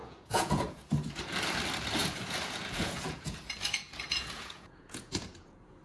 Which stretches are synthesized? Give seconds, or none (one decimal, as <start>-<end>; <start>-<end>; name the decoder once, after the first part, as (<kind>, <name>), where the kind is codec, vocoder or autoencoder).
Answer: 0.0-1.2 (vocoder, Vocos); 2.0-5.8